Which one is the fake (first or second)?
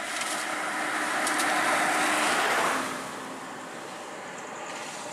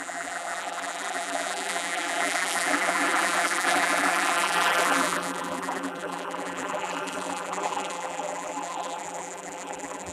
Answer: second